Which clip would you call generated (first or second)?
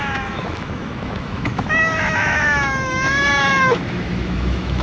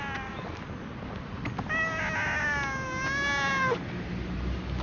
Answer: first